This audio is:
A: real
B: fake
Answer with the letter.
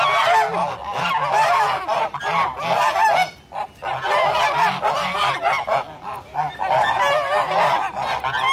A